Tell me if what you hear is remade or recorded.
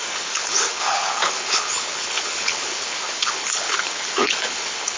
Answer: remade